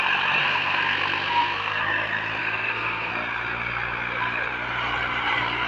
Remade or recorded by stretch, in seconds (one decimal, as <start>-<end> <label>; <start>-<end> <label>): 0.0-0.4 recorded; 0.4-1.8 remade; 1.8-2.4 recorded; 2.4-3.1 remade; 3.1-5.7 recorded